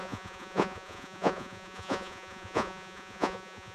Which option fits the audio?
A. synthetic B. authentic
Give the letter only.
A